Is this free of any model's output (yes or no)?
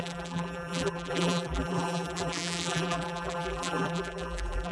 no